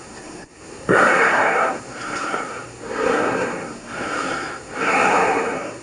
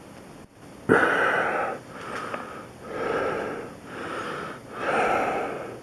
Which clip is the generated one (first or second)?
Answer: first